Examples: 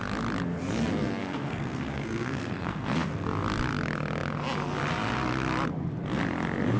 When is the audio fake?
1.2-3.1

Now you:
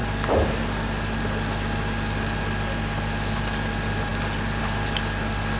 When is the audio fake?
none

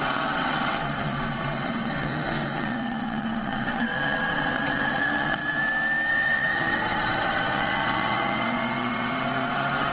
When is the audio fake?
0.0-5.4; 6.1-9.9

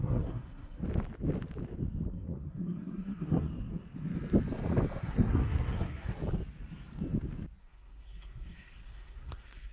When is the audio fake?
0.0-0.8; 2.1-3.5; 5.0-6.2; 7.6-9.7